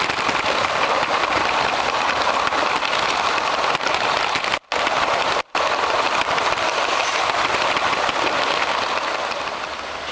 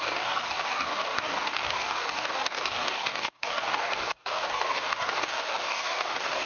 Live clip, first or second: first